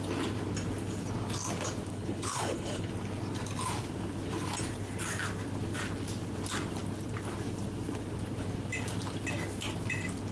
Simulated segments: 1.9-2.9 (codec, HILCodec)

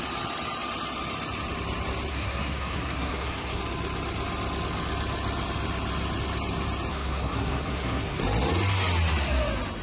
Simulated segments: 2.1-3.6 (codec, SNAC); 6.9-8.2

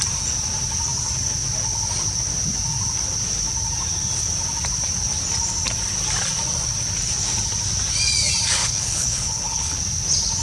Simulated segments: 8.6-9.8 (codec, HILCodec)

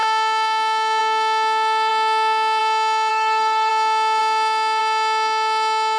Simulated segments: 3.1-3.7 (codec, SNAC)

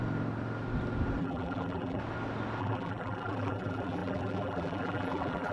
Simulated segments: 1.2-2.0 (vocoder, BigVGAN v2); 2.6-5.5

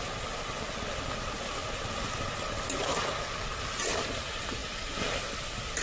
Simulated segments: none

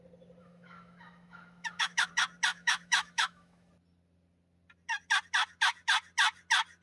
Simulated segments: 0.4-2.1 (autoencoder, DAC-VAE); 2.5-3.7

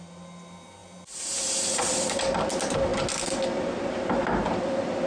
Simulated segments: none